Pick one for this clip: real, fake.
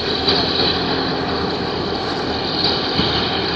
real